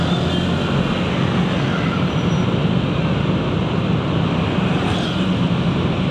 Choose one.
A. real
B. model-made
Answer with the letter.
A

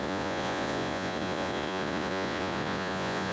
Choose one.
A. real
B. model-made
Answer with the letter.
B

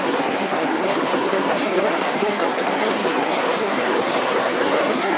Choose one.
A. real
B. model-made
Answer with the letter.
B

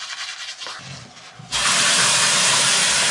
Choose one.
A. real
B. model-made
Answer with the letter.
A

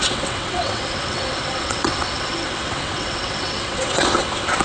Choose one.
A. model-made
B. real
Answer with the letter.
A